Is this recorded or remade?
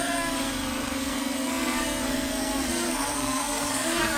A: remade